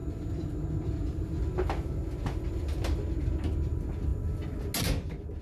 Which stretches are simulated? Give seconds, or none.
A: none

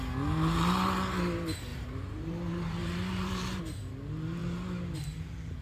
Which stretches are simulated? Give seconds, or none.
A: 1.7-3.6 (vocoder, BigVGAN v2)